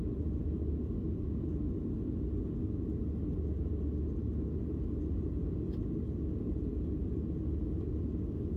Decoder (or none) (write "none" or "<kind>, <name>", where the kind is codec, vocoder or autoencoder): none